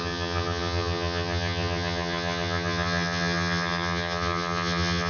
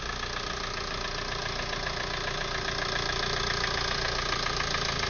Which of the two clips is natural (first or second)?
second